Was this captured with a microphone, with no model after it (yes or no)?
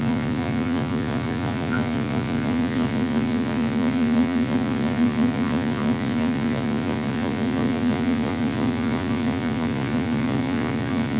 no